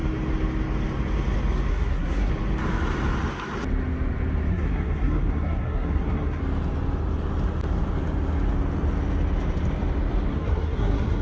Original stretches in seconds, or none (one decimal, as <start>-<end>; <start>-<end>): 0.0-1.7; 2.3-4.5; 6.4-10.3